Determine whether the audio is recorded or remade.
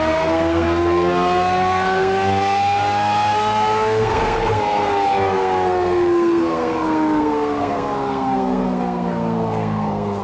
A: remade